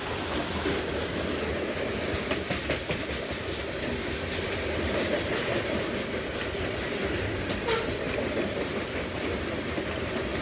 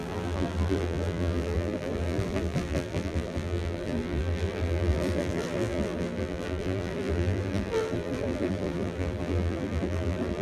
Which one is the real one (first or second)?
first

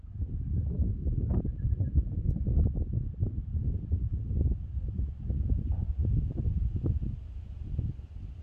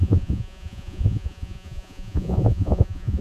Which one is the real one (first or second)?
first